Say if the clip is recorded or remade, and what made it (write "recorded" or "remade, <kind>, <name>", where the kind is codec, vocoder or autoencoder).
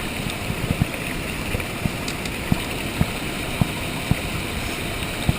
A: recorded